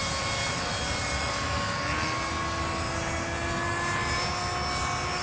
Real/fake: real